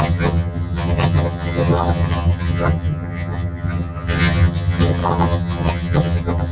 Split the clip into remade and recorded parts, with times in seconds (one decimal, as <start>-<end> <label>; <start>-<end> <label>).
0.0-6.5 remade